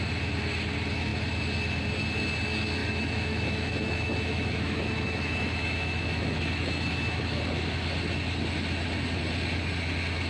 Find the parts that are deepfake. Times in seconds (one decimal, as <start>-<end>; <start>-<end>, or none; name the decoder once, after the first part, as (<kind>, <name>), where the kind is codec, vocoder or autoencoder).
2.8-7.4 (autoencoder, DAC-VAE)